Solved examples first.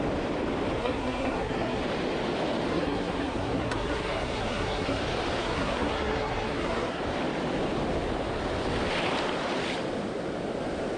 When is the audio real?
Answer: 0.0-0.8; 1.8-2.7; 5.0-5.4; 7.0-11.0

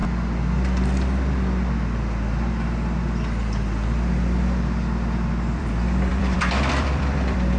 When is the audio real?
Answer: 0.0-3.4

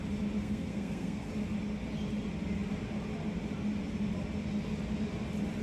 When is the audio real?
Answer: 0.0-0.4; 1.3-5.6

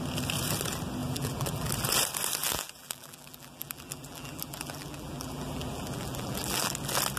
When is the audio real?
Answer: 0.0-1.0; 1.7-2.4; 6.7-7.2

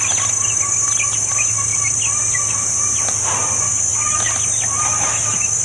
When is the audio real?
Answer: 0.0-5.6

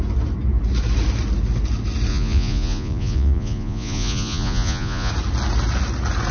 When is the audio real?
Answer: 0.0-2.1; 5.1-6.3